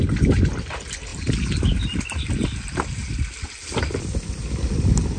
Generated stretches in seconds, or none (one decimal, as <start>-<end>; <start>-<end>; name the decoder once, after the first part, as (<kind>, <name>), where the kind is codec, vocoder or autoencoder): none

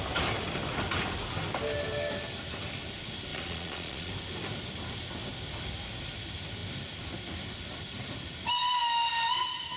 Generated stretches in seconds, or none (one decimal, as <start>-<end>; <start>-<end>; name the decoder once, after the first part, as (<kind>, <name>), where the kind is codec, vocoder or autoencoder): 3.3-4.1 (vocoder, Vocos)

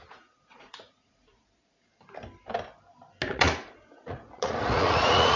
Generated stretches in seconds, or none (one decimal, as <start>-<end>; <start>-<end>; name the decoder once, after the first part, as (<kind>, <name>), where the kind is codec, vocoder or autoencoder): 0.0-1.9 (vocoder, Vocos); 3.3-5.4

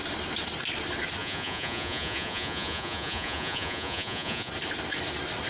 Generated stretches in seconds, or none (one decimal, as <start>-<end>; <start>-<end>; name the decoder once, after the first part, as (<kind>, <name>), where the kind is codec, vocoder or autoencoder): 1.2-4.5 (vocoder, Vocos)

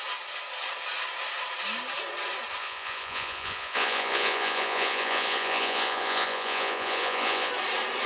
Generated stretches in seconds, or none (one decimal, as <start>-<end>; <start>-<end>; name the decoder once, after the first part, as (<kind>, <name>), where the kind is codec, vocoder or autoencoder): 2.6-7.5 (vocoder, Vocos)

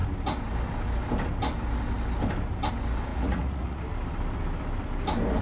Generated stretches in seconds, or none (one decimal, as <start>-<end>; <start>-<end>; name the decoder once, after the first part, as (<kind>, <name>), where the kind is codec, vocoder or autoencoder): 3.1-3.8 (vocoder, Vocos)